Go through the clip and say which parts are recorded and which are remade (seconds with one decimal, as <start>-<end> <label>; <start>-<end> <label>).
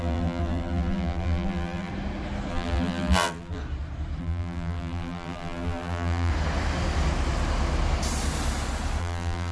0.0-1.9 remade; 1.9-2.5 recorded; 2.5-3.6 remade; 3.6-4.2 recorded; 4.2-6.3 remade; 6.3-9.0 recorded; 9.0-9.5 remade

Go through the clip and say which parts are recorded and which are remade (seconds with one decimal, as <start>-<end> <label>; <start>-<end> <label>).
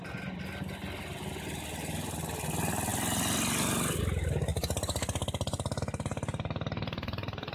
0.0-7.5 recorded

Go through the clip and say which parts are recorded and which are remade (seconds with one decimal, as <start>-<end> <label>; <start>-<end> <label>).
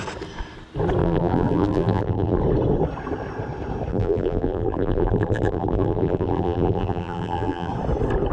0.0-1.0 recorded; 1.0-2.4 remade; 2.4-3.9 recorded; 3.9-7.7 remade; 7.7-8.3 recorded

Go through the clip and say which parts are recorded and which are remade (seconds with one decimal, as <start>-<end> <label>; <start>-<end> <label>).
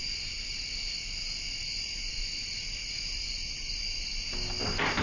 0.0-5.0 recorded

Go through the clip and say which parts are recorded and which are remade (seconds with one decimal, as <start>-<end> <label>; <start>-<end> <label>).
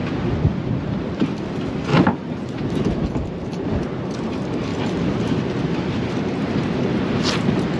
0.0-1.9 remade; 1.9-4.3 recorded; 4.3-7.8 remade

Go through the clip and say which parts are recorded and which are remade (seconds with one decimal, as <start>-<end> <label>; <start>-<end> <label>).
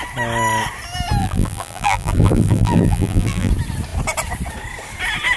0.0-1.2 recorded; 1.2-3.5 remade; 3.5-5.4 recorded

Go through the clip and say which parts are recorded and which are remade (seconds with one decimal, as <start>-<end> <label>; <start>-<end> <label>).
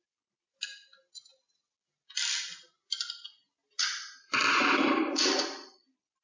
0.0-0.5 remade; 0.5-3.8 recorded; 3.8-6.2 remade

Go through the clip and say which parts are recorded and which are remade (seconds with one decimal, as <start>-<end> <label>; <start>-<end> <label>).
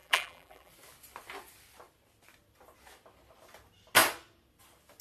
0.0-0.7 remade; 0.7-5.0 recorded